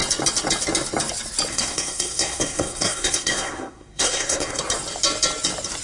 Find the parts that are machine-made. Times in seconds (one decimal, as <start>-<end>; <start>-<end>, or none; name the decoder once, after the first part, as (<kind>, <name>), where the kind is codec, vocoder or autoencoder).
1.5-4.6 (codec, SNAC)